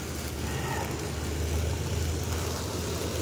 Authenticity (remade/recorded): recorded